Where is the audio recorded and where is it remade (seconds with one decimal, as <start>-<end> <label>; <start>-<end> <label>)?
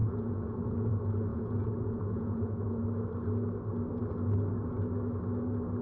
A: 0.0-0.9 remade; 0.9-1.3 recorded; 1.3-2.8 remade; 2.8-5.8 recorded